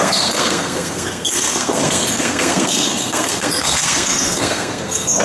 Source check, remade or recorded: remade